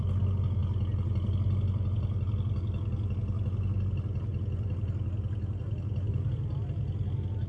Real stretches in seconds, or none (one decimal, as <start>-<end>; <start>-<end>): 0.0-7.5